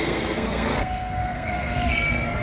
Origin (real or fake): fake